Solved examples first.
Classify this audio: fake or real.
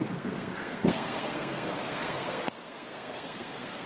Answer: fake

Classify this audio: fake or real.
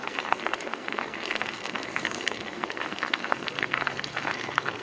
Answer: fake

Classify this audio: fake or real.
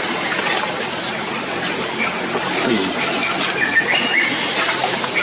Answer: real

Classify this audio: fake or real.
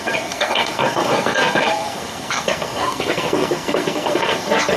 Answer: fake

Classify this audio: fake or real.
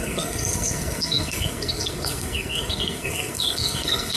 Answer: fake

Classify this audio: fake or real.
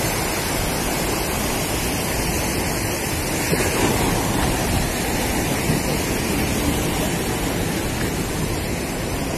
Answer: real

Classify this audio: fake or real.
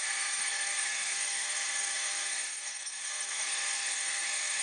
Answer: fake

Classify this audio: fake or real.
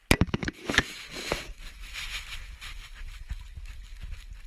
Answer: real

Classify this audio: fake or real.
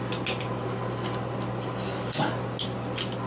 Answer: real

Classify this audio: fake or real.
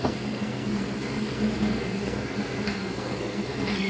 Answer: fake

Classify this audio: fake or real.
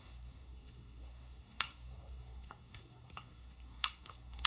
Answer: fake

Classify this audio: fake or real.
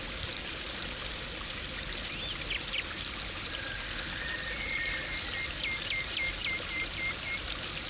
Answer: real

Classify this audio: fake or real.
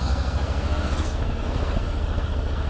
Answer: fake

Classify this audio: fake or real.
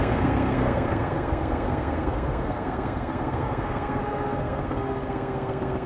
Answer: fake